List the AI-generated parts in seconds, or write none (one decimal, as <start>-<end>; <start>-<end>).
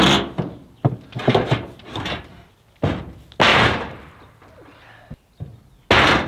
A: 3.5-4.2